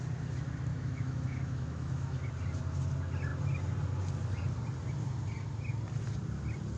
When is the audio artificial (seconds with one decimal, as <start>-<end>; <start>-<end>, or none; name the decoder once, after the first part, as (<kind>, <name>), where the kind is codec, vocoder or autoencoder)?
0.7-2.3 (autoencoder, DAC-VAE)